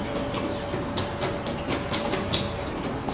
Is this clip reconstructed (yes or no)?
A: no